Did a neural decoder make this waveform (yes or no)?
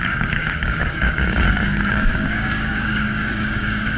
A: yes